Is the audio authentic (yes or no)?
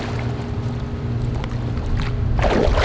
yes